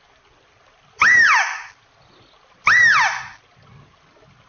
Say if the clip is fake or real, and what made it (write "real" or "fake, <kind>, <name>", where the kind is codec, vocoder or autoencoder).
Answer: real